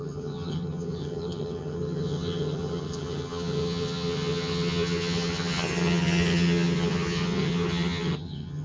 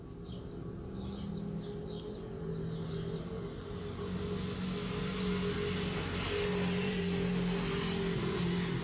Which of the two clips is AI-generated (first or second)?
first